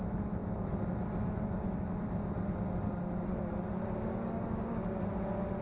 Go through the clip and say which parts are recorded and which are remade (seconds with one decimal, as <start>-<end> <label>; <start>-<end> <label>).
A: 0.0-4.1 recorded; 4.1-5.0 remade; 5.0-5.6 recorded